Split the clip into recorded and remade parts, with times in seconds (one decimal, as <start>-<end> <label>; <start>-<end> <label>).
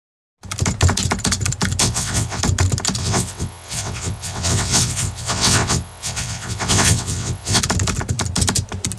0.0-1.8 recorded; 1.8-2.4 remade; 2.4-3.0 recorded; 3.0-7.6 remade; 7.6-9.0 recorded